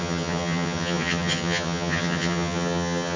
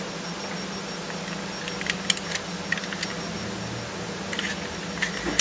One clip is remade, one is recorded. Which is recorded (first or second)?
second